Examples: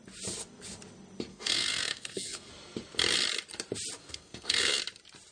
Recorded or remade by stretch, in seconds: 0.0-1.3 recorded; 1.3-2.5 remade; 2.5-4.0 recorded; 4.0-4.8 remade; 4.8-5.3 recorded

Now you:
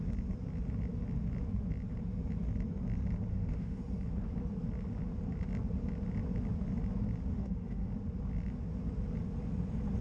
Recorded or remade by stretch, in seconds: 0.0-3.3 recorded; 3.3-3.8 remade; 3.8-7.3 recorded; 7.3-7.9 remade; 7.9-10.0 recorded